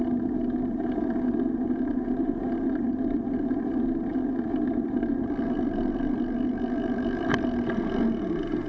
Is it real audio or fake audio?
real